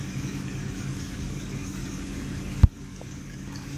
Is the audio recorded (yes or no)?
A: no